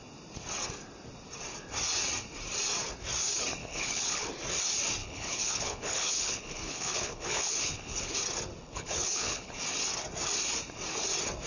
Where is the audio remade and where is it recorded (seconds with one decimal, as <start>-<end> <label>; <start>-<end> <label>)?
0.0-3.6 recorded; 3.6-4.3 remade; 4.3-5.0 recorded; 5.0-8.2 remade; 8.2-8.6 recorded; 8.6-9.6 remade; 9.6-11.5 recorded